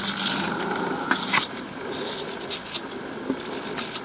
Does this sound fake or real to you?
real